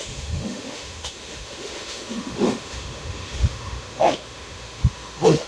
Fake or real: fake